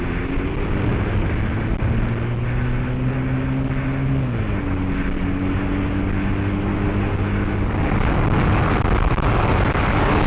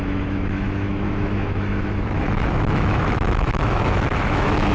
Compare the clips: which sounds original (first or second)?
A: first